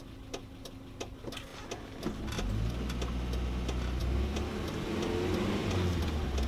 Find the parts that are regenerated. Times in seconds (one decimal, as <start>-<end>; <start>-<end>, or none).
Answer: none